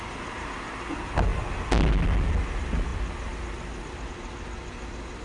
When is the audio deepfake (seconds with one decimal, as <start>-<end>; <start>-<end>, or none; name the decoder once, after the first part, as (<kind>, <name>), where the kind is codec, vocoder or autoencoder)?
none